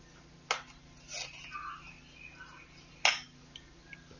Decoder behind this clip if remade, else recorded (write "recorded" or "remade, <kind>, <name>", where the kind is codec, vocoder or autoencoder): recorded